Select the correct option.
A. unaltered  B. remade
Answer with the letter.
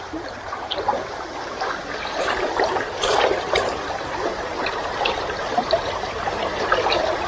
B